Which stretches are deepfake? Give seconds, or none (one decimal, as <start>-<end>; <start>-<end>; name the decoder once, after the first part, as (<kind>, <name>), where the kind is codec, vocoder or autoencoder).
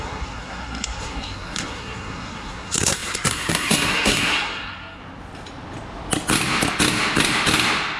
0.0-5.0 (codec, SNAC)